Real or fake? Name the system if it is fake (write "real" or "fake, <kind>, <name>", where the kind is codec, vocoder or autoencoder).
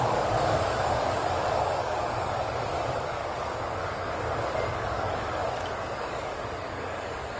fake, codec, DAC